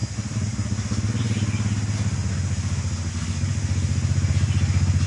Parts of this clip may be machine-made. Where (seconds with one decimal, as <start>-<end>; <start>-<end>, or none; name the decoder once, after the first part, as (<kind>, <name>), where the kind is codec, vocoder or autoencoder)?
none